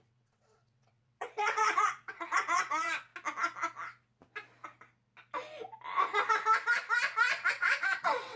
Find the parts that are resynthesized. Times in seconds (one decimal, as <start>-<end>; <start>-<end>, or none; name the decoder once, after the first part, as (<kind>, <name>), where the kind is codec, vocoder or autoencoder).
0.0-3.1 (vocoder, WaveNeXt); 7.5-8.4